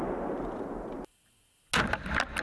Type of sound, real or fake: real